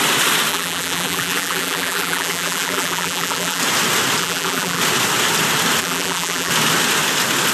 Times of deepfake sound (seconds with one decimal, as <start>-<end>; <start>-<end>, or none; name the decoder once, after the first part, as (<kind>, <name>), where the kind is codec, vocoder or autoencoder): 0.5-3.6 (vocoder, BigVGAN v2); 4.2-4.8; 5.8-6.5

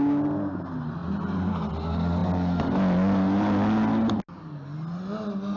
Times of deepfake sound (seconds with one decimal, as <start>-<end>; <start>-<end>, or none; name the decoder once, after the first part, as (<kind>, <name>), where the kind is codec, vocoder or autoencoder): none

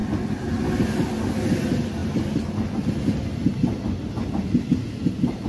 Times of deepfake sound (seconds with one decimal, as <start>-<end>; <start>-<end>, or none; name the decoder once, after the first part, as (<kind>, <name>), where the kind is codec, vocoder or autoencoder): none

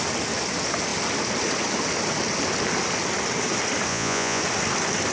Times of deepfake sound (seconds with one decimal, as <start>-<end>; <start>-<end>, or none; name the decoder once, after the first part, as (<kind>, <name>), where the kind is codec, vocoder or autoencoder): 3.9-4.4 (vocoder, Vocos)

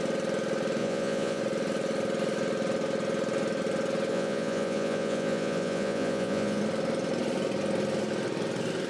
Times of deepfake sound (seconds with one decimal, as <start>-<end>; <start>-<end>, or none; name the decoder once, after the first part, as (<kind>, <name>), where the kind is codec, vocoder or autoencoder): 0.8-1.4 (vocoder, Vocos); 4.1-6.6